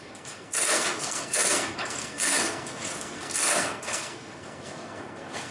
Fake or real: fake